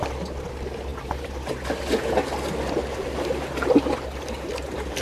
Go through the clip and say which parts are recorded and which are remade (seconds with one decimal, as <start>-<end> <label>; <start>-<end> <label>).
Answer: 0.0-5.0 recorded